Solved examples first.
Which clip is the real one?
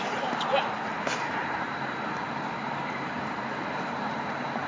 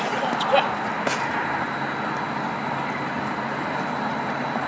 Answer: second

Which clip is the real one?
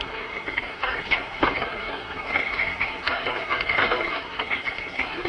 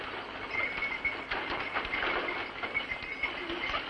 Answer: second